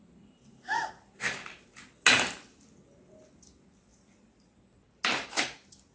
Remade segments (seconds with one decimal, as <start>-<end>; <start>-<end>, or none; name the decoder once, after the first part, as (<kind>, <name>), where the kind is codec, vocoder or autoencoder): none